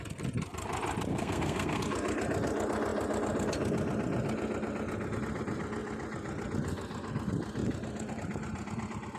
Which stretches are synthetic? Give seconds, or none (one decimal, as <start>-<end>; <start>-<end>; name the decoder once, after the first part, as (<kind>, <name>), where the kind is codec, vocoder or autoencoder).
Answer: 1.1-1.8 (codec, SNAC)